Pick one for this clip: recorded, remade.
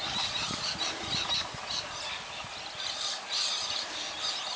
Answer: recorded